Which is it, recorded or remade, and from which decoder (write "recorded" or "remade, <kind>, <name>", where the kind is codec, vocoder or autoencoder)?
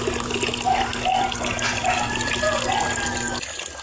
recorded